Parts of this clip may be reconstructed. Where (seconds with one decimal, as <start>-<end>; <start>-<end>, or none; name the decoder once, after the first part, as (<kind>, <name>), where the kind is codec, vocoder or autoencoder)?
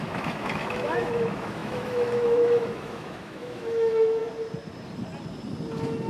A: 0.0-4.2 (autoencoder, DAC-VAE)